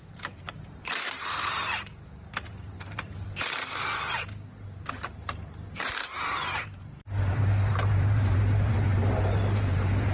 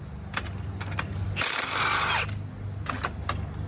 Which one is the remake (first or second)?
first